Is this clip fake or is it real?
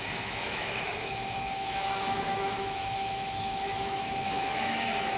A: fake